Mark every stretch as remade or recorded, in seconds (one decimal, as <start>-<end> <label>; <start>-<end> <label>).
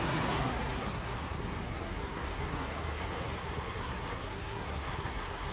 0.0-5.5 remade